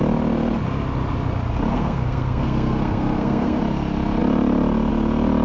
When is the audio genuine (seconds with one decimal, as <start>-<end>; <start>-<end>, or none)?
0.0-1.7; 3.6-5.4